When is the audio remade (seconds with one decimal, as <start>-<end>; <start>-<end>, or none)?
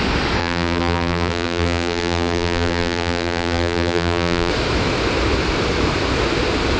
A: 0.4-4.5